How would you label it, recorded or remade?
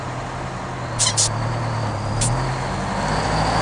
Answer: recorded